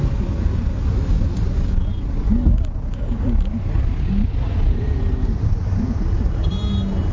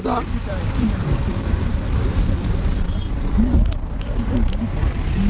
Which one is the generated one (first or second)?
second